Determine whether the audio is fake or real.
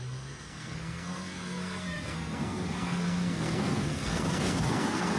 fake